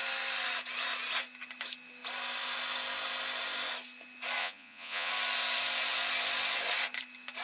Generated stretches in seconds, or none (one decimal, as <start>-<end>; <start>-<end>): 4.4-5.1